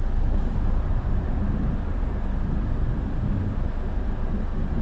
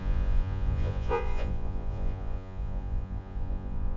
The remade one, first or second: second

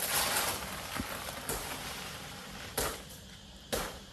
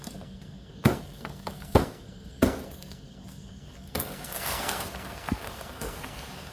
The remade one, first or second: second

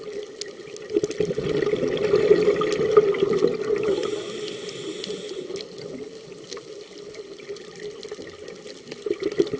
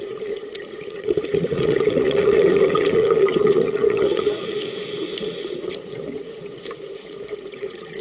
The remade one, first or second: second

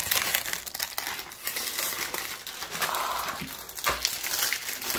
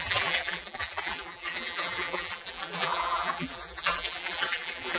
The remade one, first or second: second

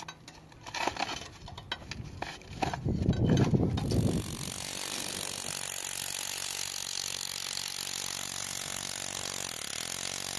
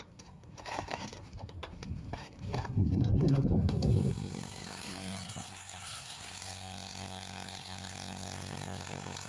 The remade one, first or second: second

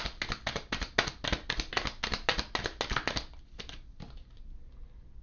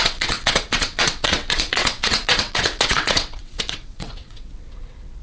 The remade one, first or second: second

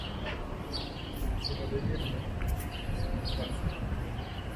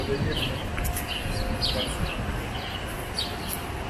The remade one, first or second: first